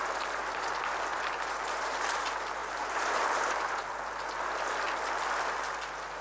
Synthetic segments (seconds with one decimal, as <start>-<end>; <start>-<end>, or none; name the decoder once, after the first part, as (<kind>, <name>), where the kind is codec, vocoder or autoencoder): 1.1-2.2 (vocoder, BigVGAN v2); 2.6-4.0